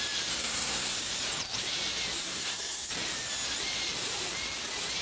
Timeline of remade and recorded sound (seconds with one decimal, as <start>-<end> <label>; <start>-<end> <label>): 0.0-0.4 recorded; 0.4-1.0 remade; 1.0-2.2 recorded; 2.2-2.9 remade; 2.9-5.0 recorded